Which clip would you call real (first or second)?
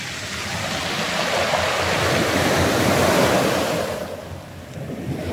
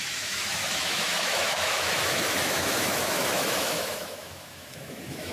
first